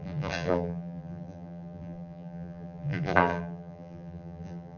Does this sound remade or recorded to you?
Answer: remade